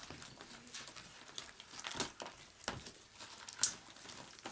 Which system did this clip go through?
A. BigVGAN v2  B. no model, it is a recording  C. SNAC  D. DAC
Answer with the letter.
B